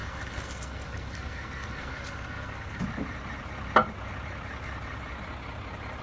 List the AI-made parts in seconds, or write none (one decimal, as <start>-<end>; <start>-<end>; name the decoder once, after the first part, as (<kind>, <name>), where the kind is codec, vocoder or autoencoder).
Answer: 0.0-2.8 (codec, SNAC)

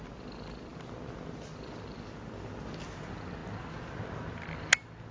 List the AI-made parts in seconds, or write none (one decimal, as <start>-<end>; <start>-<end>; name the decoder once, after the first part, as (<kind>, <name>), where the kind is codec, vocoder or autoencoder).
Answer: none

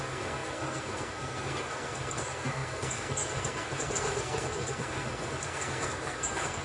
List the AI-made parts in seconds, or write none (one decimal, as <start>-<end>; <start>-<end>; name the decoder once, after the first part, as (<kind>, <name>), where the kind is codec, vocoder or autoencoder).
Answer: 0.0-6.6 (codec, SNAC)

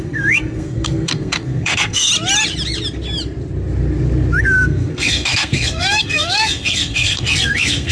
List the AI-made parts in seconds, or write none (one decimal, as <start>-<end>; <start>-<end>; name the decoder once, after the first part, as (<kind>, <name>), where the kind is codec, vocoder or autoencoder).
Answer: 0.0-2.1 (codec, SNAC); 4.4-7.9

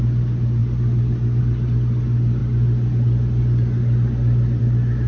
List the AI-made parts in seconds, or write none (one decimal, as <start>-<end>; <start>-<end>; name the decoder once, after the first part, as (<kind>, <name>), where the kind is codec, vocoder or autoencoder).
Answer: none

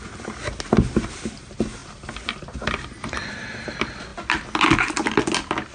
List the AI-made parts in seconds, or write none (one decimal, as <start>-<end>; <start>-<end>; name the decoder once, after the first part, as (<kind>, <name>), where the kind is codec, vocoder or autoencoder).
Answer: none